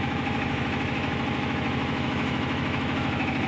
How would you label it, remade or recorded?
remade